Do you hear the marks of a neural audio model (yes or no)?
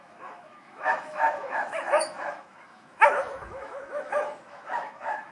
yes